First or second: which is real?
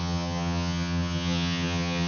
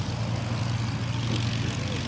second